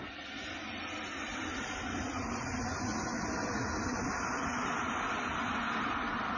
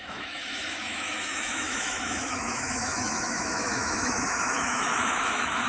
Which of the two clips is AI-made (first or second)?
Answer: second